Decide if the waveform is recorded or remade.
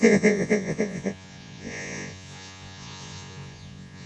remade